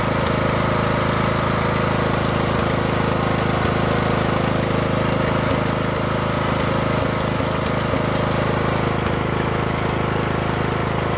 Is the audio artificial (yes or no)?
no